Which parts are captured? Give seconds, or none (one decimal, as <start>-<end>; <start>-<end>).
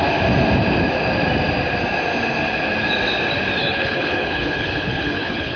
0.0-3.6